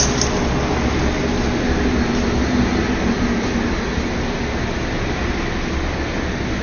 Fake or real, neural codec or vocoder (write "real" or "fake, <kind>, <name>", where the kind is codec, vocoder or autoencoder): real